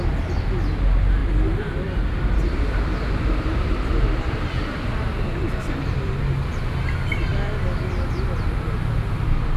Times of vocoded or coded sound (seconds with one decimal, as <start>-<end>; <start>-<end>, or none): 1.2-5.5